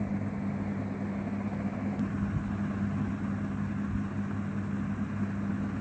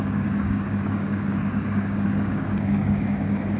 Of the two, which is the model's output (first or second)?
second